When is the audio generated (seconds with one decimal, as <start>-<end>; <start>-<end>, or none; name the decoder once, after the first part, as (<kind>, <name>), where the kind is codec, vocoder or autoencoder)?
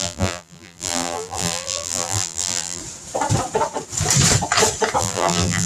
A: 0.0-2.8 (vocoder, BigVGAN v2); 5.0-5.7